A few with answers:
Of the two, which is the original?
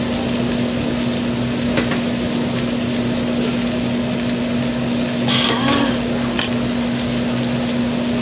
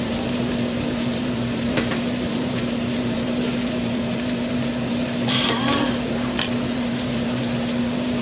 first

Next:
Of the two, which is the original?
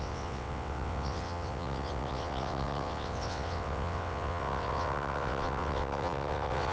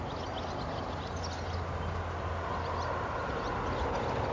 second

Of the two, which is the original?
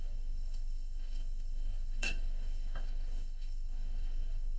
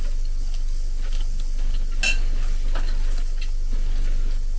second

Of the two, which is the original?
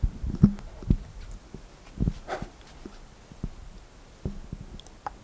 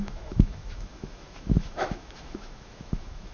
first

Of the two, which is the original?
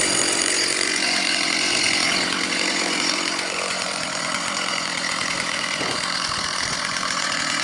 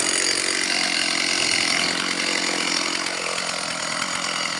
second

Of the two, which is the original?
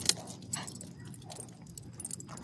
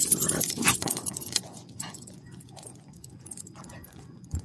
first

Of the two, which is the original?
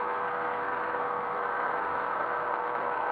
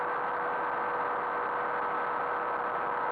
second